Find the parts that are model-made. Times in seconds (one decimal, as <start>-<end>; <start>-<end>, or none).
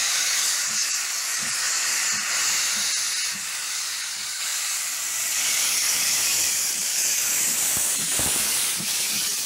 0.0-2.0; 3.4-9.5